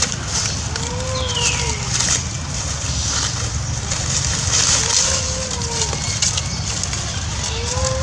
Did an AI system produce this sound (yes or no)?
no